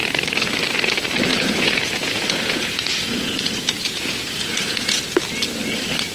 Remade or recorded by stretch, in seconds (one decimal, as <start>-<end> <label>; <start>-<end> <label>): 0.0-1.3 recorded; 1.3-5.0 remade; 5.0-6.1 recorded

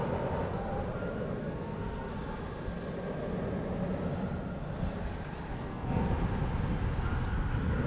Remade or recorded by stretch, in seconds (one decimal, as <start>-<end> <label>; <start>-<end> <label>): 0.0-1.4 recorded; 1.4-2.1 remade; 2.1-5.5 recorded; 5.5-6.1 remade; 6.1-7.9 recorded